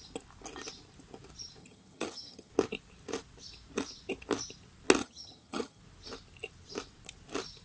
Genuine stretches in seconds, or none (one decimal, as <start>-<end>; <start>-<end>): 0.0-1.6; 2.5-5.0; 5.8-7.6